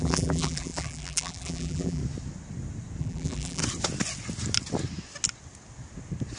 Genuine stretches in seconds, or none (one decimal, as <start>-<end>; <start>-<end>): 2.0-3.0; 3.6-6.4